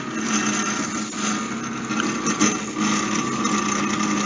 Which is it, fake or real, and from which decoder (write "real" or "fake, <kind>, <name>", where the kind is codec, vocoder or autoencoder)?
real